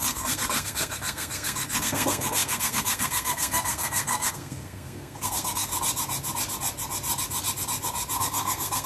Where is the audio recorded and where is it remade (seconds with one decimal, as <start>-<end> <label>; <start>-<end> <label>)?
0.0-5.7 remade; 5.7-8.2 recorded; 8.2-8.9 remade